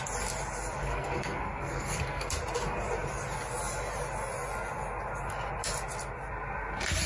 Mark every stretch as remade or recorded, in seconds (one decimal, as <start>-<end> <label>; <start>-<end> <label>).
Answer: 0.0-0.9 recorded; 0.9-2.3 remade; 2.3-7.1 recorded